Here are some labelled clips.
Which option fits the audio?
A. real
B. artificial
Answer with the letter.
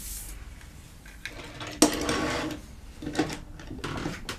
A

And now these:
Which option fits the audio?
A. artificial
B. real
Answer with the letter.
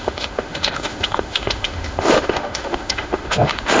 A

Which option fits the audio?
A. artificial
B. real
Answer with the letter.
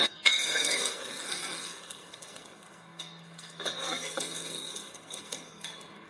A